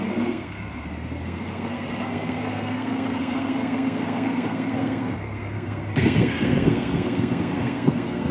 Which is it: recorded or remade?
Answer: remade